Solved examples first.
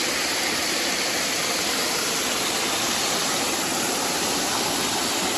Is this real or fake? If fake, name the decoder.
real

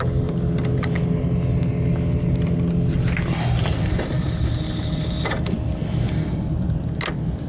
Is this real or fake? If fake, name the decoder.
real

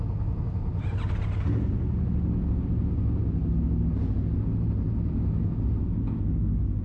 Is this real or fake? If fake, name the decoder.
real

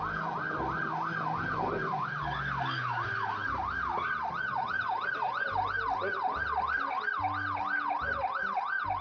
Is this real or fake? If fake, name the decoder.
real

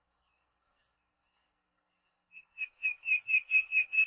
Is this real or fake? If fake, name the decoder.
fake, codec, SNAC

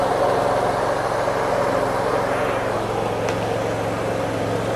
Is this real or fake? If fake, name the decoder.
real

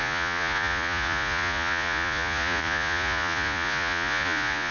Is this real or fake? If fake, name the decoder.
fake, vocoder, Vocos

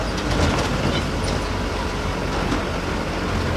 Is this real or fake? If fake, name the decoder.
real